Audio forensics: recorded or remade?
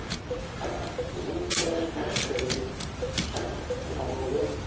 recorded